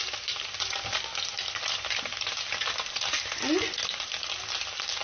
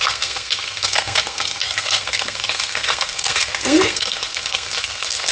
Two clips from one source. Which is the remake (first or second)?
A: second